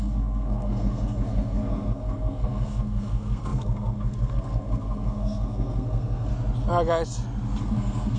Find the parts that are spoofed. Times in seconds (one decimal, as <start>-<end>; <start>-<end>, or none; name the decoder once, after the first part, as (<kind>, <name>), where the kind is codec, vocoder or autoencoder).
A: 0.0-6.3 (codec, SNAC); 7.6-8.2